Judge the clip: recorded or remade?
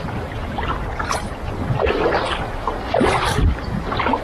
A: recorded